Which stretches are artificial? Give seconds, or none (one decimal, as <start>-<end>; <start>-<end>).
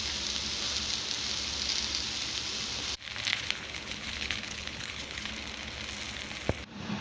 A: 3.3-5.3